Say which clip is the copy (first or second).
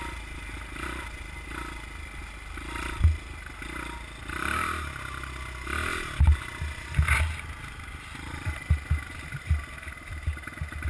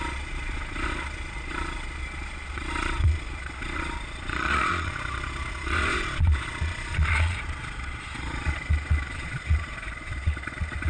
second